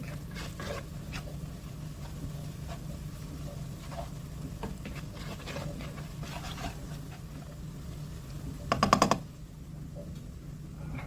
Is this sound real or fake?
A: real